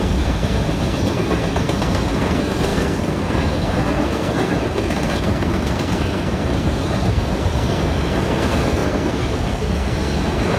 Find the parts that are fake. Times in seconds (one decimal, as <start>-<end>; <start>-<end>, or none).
0.0-10.6